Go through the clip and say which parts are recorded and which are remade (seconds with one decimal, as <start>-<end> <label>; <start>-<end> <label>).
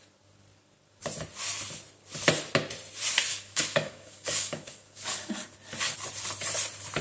0.0-3.3 recorded; 3.3-5.3 remade; 5.3-7.0 recorded